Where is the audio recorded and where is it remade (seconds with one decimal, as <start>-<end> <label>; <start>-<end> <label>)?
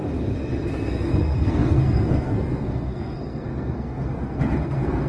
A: 0.0-0.7 recorded; 0.7-5.1 remade